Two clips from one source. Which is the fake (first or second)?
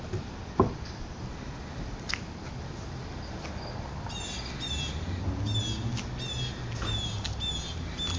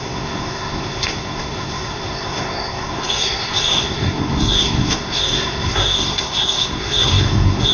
second